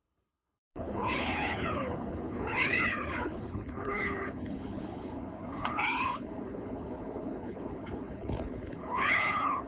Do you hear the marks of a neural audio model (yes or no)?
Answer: yes